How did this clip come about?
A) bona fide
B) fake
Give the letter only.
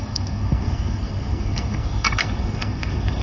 B